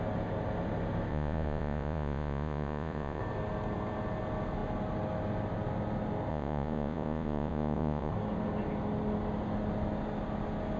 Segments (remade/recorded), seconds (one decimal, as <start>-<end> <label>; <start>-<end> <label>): 0.0-1.1 recorded; 1.1-3.2 remade; 3.2-6.3 recorded; 6.3-8.1 remade; 8.1-10.8 recorded